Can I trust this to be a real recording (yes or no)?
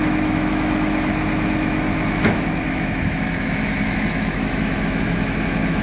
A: no